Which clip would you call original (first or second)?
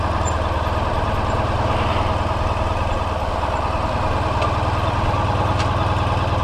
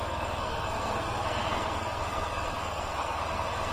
first